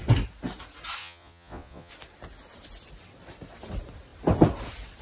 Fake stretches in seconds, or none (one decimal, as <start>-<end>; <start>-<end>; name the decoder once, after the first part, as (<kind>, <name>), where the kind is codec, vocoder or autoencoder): 1.0-1.9 (vocoder, Vocos)